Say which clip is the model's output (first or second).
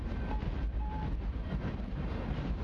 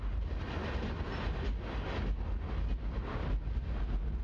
first